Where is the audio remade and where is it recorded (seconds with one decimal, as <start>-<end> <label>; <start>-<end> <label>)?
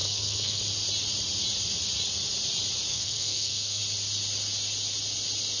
0.0-0.6 remade; 0.6-2.9 recorded; 2.9-3.8 remade; 3.8-5.6 recorded